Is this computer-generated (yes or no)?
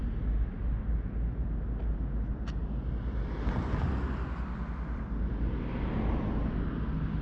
no